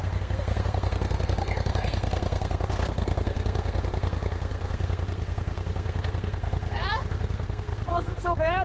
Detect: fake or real fake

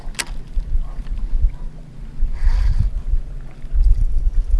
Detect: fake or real real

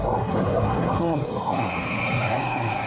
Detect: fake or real fake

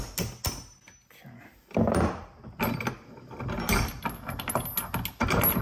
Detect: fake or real real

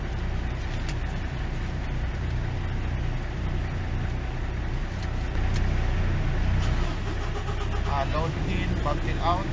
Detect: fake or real real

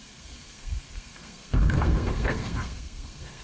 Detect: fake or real fake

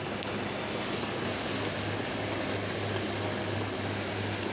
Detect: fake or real real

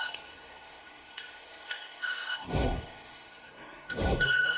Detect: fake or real fake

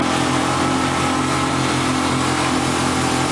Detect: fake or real real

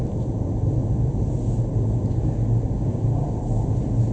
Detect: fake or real real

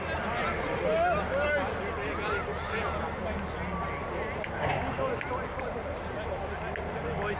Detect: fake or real real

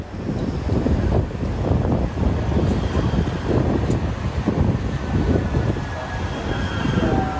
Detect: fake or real real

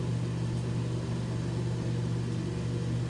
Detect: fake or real real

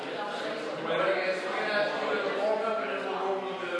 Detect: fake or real real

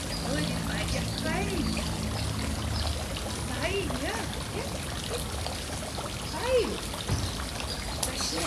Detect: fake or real real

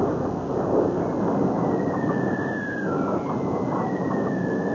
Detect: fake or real real